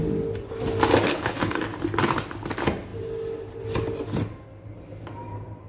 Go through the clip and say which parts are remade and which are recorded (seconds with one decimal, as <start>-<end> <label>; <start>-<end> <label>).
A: 0.0-1.1 recorded; 1.1-1.6 remade; 1.6-5.7 recorded